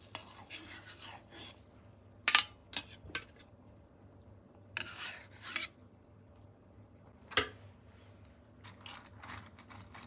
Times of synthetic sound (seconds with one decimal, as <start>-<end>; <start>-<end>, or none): none

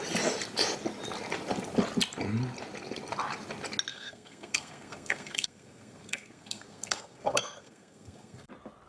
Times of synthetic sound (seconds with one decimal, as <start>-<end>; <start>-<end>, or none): 3.9-8.5

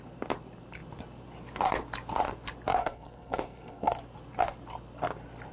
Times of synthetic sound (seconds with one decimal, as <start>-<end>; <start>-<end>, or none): 2.8-4.0

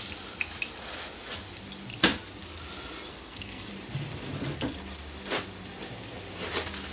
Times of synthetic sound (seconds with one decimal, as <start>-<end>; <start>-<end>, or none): 3.1-3.7

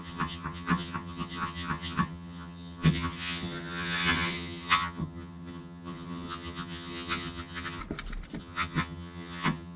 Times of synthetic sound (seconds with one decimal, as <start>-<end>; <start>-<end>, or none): 0.0-7.8; 8.4-9.8

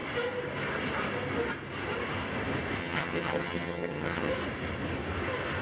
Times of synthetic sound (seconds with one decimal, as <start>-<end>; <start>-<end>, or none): 2.8-4.3

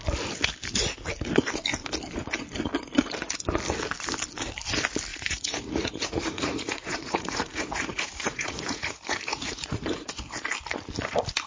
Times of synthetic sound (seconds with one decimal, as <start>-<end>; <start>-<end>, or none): 5.1-10.2

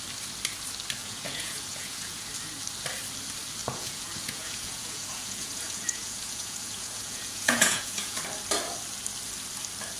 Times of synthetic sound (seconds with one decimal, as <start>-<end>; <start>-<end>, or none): 1.0-2.3; 3.6-8.2